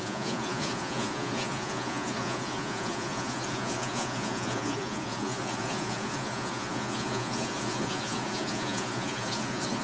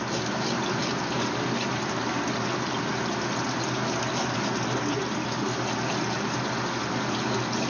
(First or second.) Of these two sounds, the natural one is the second